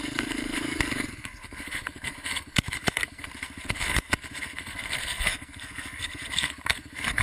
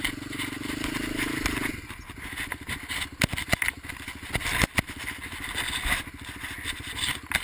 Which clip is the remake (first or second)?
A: first